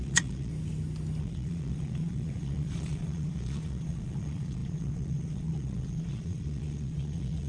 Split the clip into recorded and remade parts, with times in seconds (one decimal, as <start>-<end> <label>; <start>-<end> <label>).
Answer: 0.0-0.5 remade; 0.5-1.2 recorded; 1.2-7.5 remade